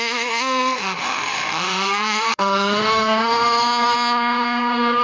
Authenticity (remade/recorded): remade